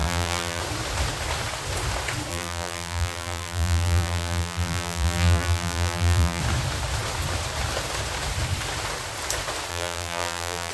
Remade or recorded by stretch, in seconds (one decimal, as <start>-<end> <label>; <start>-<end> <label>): 0.0-0.6 remade; 0.6-2.3 recorded; 2.3-6.4 remade; 6.4-9.7 recorded; 9.7-10.7 remade